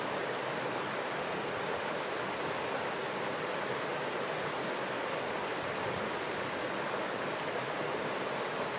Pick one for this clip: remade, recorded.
recorded